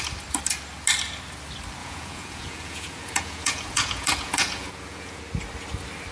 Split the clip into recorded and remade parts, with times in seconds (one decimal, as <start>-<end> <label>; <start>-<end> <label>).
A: 0.0-1.8 recorded; 1.8-5.2 remade; 5.2-6.1 recorded